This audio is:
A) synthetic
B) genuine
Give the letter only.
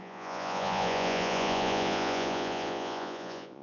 A